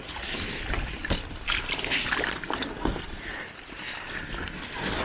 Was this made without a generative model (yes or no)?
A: yes